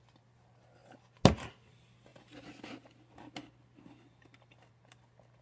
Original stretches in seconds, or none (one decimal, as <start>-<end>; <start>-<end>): 0.0-5.4